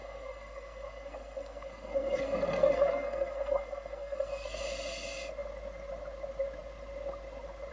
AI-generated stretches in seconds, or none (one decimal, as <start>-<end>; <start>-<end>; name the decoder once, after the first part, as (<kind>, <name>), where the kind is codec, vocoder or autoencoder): 0.0-4.6 (codec, SNAC)